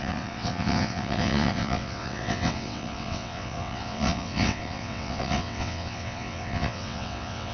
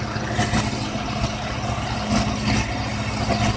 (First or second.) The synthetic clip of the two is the first